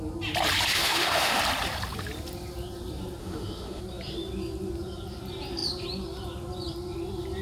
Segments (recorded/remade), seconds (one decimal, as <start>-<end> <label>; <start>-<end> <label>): 0.0-0.7 recorded; 0.7-1.4 remade; 1.4-3.2 recorded; 3.2-3.8 remade; 3.8-7.4 recorded